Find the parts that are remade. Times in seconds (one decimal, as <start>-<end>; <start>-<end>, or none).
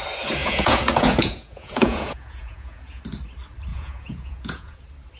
0.4-3.0; 3.7-4.8